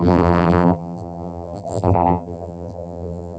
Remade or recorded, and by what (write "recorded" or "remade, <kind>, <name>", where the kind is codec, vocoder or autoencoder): remade, vocoder, BigVGAN v2